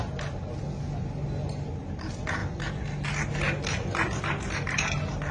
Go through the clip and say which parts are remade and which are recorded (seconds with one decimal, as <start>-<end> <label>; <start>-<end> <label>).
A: 0.0-5.3 recorded